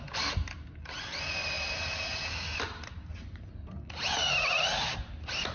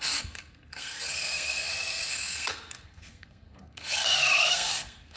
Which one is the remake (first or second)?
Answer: second